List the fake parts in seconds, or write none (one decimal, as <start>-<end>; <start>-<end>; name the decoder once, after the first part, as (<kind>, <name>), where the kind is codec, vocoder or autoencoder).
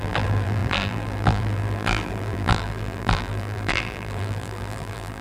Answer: 0.0-5.2 (vocoder, BigVGAN v2)